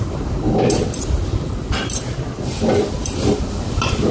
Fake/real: fake